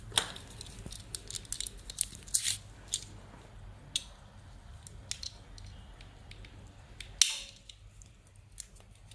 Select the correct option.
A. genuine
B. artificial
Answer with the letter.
A